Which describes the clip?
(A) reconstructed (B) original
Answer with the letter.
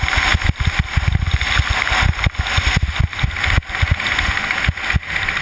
B